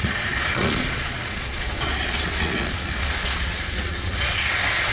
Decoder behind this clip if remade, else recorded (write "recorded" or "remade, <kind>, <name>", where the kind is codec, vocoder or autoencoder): remade, vocoder, Vocos